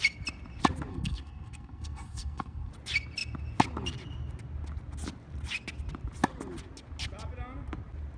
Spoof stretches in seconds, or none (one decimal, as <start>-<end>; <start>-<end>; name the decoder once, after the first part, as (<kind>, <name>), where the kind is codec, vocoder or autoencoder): 0.9-2.7 (codec, SNAC)